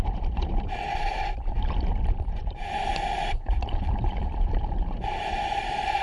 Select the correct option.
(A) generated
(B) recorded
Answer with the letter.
A